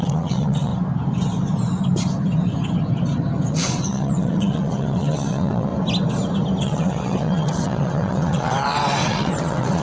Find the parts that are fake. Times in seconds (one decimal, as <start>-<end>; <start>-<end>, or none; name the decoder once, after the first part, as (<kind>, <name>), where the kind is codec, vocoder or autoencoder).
0.0-0.7 (vocoder, WaveNeXt); 3.5-5.7; 6.6-9.8